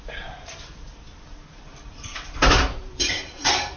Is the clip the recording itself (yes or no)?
no